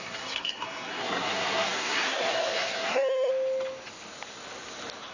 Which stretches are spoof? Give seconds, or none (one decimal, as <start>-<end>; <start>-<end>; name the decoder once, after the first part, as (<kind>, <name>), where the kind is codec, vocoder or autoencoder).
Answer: 0.0-3.3 (codec, SNAC)